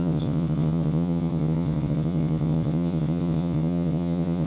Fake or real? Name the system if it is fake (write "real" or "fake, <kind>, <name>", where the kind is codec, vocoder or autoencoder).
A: fake, vocoder, Vocos